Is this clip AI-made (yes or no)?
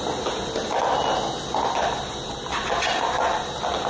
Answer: no